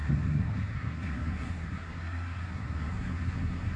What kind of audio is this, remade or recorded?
remade